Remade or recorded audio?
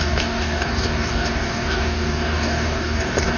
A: remade